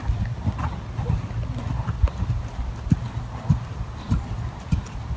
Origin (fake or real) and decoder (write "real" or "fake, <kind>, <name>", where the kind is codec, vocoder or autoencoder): real